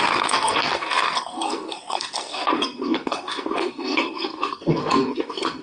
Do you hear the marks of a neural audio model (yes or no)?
yes